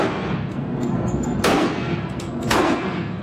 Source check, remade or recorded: remade